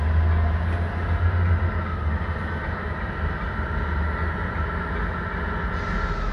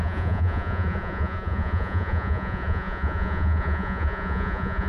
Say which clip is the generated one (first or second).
second